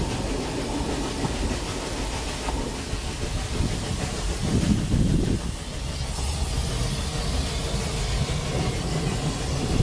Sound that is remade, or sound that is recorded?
recorded